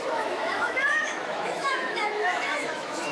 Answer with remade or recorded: remade